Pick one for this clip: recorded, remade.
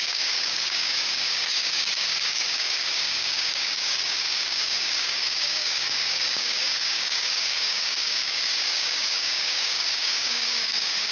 remade